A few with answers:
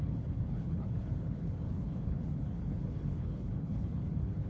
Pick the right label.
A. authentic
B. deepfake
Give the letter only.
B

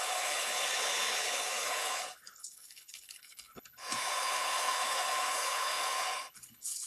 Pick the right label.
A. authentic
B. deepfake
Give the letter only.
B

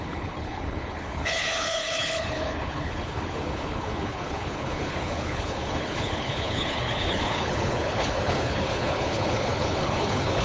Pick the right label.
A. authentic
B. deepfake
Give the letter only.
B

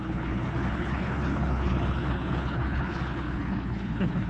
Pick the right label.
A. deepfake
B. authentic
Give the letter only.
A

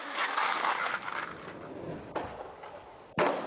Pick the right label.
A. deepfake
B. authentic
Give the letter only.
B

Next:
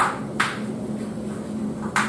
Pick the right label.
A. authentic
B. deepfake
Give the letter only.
A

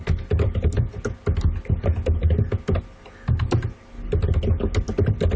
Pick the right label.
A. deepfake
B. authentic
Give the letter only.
B